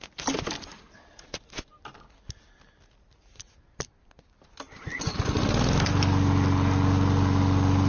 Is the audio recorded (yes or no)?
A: yes